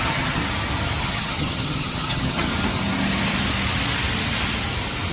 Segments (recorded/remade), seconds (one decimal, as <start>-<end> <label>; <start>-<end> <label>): 0.0-0.4 remade; 0.4-1.0 recorded; 1.0-2.5 remade; 2.5-5.1 recorded